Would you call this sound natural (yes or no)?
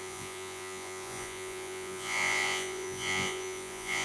no